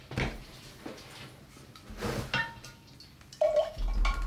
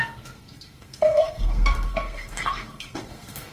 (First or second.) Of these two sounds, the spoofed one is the second